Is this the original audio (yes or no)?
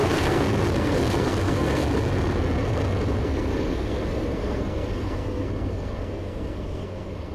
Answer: no